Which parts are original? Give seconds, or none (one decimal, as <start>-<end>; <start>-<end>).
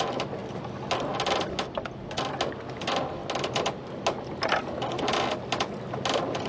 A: 0.0-6.5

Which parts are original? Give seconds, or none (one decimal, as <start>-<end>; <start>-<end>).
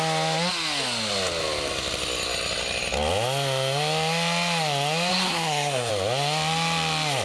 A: 0.0-5.1; 5.9-7.2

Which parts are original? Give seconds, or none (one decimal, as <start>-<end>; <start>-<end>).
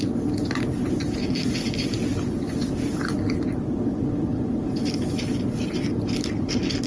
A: 0.0-6.9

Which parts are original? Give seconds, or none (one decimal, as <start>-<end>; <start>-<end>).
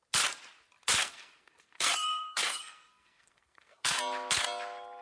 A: 0.0-1.0; 4.0-5.0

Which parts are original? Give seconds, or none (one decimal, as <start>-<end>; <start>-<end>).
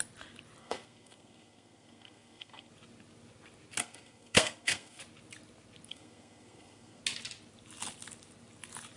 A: 0.0-0.6; 2.7-3.8; 5.0-5.9; 7.0-9.0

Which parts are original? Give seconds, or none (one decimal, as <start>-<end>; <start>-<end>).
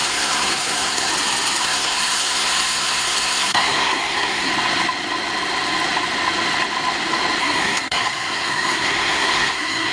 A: 1.1-1.6; 4.5-7.4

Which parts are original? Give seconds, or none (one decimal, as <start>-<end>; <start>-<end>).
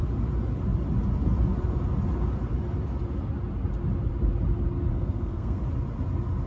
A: 0.0-4.9; 5.6-6.5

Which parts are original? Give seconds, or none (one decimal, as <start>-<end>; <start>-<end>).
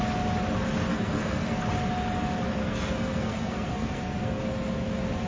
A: 0.0-0.9; 1.6-2.6; 4.4-5.3